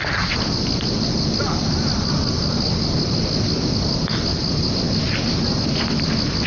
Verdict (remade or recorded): recorded